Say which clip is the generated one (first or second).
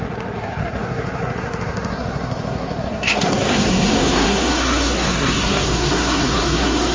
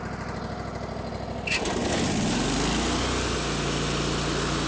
first